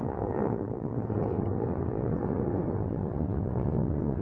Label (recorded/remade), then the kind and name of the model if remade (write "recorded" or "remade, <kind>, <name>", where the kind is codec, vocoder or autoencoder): remade, vocoder, WaveNeXt